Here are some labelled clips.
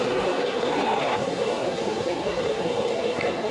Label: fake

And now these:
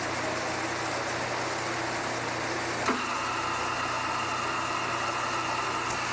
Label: real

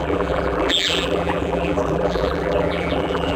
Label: fake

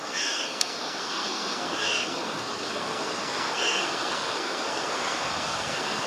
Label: fake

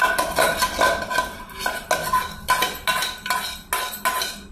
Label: real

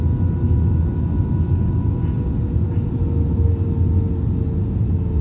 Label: real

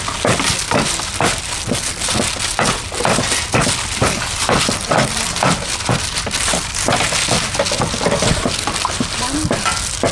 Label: real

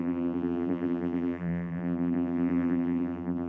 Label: fake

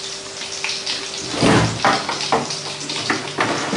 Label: real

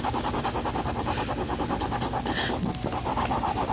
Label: real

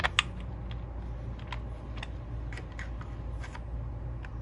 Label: real